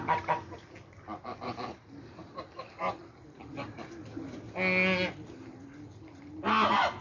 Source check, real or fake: real